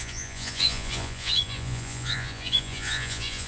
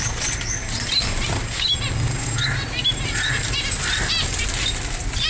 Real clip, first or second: second